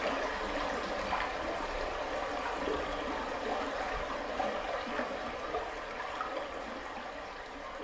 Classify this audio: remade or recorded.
recorded